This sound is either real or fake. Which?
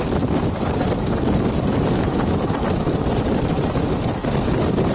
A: real